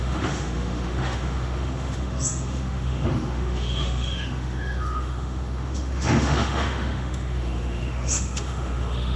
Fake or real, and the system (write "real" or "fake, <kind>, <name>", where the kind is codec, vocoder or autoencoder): fake, autoencoder, DAC-VAE